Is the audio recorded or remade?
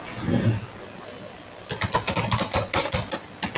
recorded